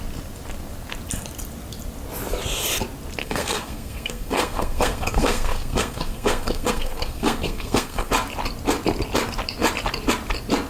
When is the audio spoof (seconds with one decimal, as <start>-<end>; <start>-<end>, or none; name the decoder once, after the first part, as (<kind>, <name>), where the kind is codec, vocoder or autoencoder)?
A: 3.2-8.1 (codec, SNAC)